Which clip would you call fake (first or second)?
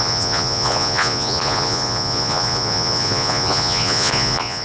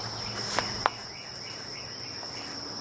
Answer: first